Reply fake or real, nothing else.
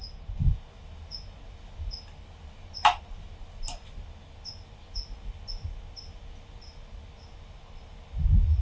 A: real